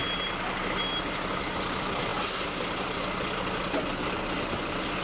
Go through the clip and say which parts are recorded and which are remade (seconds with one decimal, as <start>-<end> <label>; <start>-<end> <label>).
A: 0.0-5.0 recorded